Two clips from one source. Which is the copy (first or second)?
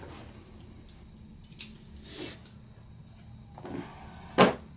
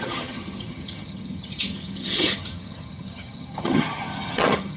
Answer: second